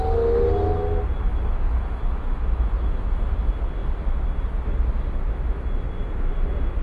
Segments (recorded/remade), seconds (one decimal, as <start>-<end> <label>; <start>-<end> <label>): 0.0-1.3 recorded; 1.3-3.2 remade; 3.2-6.8 recorded

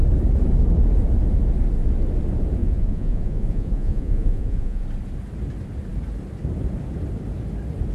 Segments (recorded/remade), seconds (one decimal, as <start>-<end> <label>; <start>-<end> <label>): 0.0-2.6 recorded; 2.6-4.8 remade; 4.8-7.9 recorded

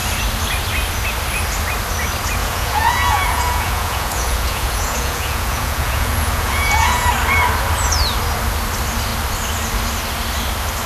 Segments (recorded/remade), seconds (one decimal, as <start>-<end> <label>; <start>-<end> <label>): 0.0-2.4 recorded; 2.4-7.1 remade; 7.1-10.9 recorded

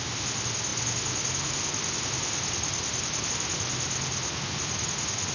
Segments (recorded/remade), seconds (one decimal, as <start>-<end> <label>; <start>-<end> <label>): 0.0-5.3 recorded

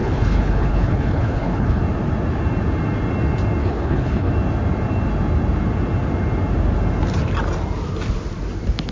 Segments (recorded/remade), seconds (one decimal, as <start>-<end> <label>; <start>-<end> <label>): 0.0-1.8 remade; 1.8-3.6 recorded; 3.6-4.3 remade; 4.3-8.9 recorded

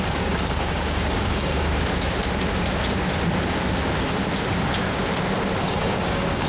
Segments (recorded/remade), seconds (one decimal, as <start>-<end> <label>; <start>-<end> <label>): 0.0-1.7 remade; 1.7-5.6 recorded; 5.6-6.5 remade

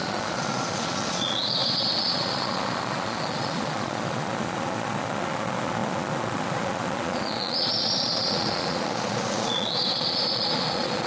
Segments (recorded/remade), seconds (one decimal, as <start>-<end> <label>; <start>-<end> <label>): 0.0-11.1 remade